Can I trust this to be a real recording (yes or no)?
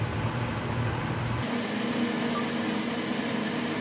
yes